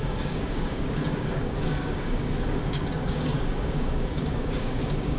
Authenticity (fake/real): fake